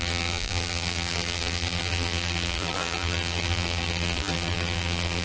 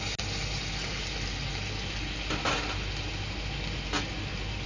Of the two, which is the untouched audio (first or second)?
second